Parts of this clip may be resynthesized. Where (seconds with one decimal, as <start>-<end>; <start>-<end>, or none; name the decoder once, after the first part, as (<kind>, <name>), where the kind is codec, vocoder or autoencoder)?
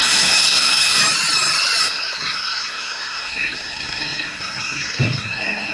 0.0-1.0 (codec, SNAC); 1.8-5.7